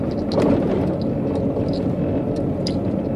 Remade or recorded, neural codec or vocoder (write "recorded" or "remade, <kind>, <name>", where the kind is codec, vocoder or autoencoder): recorded